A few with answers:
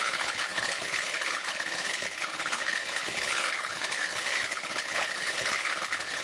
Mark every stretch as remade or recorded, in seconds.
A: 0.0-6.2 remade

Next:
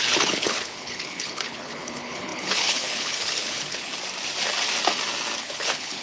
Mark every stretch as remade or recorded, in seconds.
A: 0.0-3.9 remade; 3.9-5.4 recorded; 5.4-6.0 remade

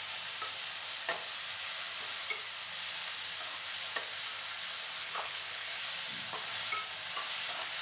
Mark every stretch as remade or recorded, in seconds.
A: 0.0-5.0 recorded; 5.0-5.8 remade; 5.8-7.8 recorded

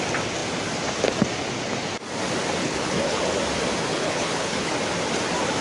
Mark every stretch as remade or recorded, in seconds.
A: 0.0-2.6 recorded; 2.6-3.2 remade; 3.2-3.9 recorded; 3.9-4.7 remade; 4.7-5.6 recorded

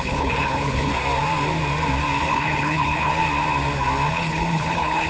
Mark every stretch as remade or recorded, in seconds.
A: 0.0-0.9 remade; 0.9-2.2 recorded; 2.2-3.1 remade; 3.1-4.1 recorded; 4.1-5.1 remade

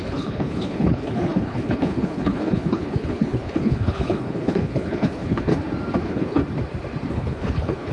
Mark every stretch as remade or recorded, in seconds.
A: 0.0-5.5 remade; 5.5-6.0 recorded; 6.0-6.4 remade; 6.4-7.1 recorded; 7.1-7.9 remade

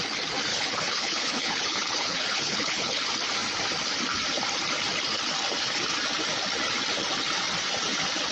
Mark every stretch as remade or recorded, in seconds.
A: 0.0-0.5 recorded; 0.5-3.0 remade; 3.0-8.3 recorded

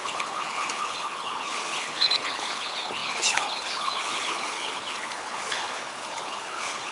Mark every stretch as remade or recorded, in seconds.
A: 0.0-6.9 remade